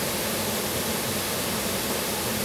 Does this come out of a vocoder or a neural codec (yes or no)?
no